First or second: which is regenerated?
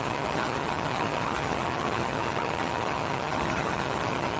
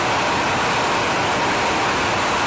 first